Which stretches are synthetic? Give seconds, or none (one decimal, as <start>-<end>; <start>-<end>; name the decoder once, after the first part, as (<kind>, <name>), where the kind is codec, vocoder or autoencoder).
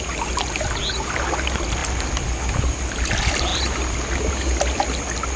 none